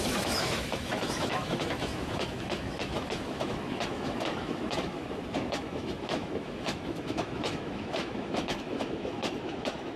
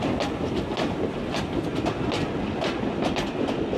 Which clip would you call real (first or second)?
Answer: second